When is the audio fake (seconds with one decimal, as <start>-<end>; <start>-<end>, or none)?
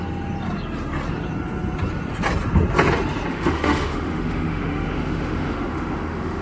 3.3-6.4